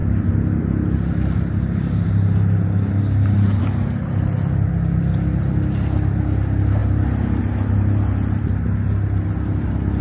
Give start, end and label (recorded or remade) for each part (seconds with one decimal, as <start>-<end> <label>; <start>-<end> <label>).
0.0-10.0 recorded